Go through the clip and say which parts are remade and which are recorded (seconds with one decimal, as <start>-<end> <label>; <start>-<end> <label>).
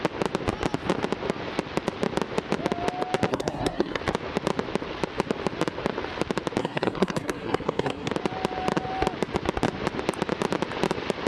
0.0-3.3 recorded; 3.3-4.0 remade; 4.0-6.6 recorded; 6.6-8.1 remade; 8.1-11.3 recorded